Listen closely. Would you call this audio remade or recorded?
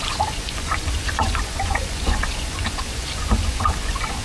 remade